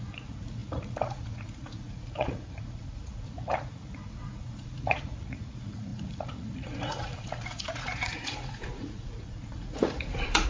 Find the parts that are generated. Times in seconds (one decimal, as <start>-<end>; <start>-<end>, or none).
0.0-10.5

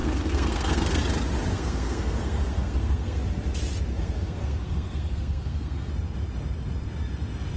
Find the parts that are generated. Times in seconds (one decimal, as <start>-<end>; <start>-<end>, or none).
0.0-1.0; 1.5-3.2; 3.9-5.9

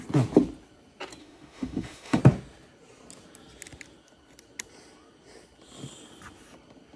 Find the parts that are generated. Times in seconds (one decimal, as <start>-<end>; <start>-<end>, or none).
1.2-2.2

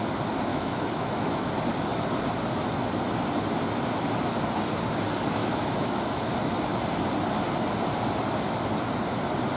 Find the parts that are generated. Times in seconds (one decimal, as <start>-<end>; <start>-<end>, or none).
0.5-1.5; 5.4-6.3

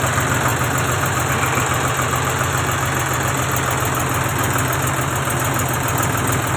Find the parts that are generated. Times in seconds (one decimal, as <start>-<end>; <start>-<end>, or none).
0.5-1.3

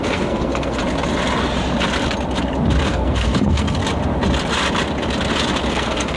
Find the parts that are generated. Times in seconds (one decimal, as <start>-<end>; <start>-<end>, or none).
0.0-0.8; 2.9-3.8; 5.7-6.2

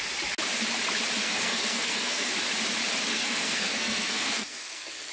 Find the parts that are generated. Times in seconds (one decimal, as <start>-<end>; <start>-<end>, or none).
1.2-2.3; 3.1-5.1